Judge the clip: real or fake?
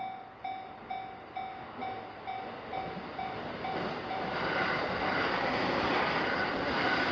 real